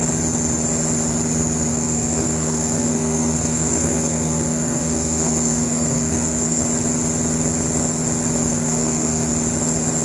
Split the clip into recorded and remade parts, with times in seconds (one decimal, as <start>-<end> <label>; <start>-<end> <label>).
0.0-1.7 recorded; 1.7-6.6 remade; 6.6-8.5 recorded; 8.5-9.3 remade; 9.3-10.0 recorded